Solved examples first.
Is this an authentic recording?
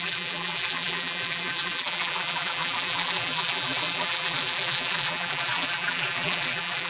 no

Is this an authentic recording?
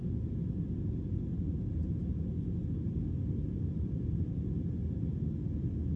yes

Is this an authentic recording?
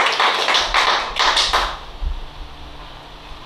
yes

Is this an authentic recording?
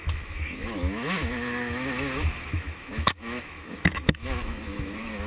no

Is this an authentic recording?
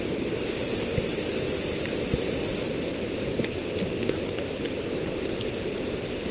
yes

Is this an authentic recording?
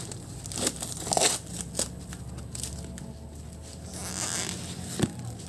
yes